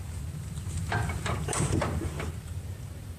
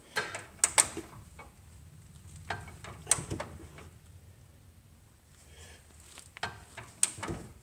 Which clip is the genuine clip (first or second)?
second